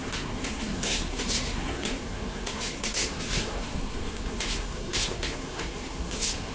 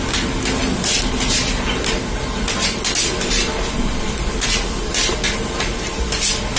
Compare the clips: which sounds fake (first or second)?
first